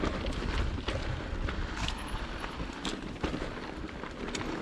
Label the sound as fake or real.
real